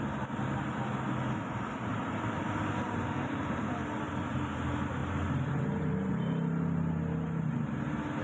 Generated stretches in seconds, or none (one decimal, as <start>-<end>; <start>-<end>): 1.9-4.1